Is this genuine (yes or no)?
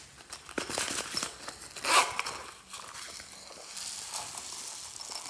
yes